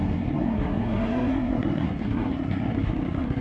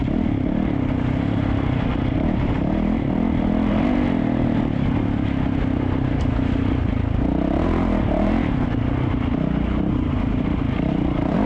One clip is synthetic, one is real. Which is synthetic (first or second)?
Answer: first